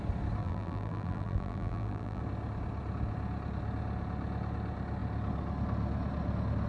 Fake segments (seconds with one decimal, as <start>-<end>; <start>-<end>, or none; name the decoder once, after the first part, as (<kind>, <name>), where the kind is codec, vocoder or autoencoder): 0.4-2.2 (vocoder, BigVGAN v2)